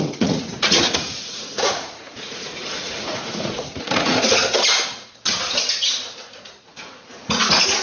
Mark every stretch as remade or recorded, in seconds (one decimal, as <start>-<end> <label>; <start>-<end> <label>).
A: 0.0-4.4 remade; 4.4-5.7 recorded; 5.7-7.8 remade